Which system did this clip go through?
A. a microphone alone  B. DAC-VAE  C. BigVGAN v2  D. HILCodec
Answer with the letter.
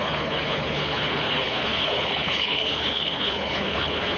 D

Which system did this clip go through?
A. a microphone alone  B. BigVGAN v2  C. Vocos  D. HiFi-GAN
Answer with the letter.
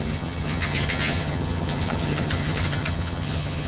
D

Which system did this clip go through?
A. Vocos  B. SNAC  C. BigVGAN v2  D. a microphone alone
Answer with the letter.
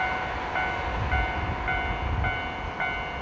D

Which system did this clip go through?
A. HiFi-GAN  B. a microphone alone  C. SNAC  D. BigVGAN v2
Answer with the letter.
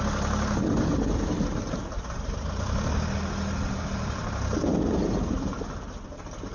B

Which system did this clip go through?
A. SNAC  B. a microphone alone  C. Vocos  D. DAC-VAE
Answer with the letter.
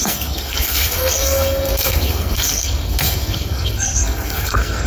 A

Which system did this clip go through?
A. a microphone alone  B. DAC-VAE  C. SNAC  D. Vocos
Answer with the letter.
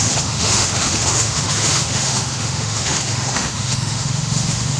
B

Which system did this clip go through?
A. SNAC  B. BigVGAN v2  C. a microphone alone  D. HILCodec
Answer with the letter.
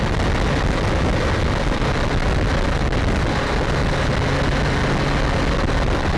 C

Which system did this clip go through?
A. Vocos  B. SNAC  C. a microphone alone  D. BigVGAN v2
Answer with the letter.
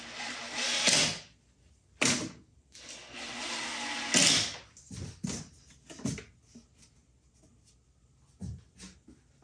C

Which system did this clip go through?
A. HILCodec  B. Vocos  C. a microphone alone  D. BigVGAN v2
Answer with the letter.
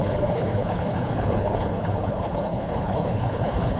A